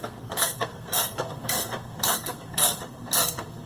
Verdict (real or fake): fake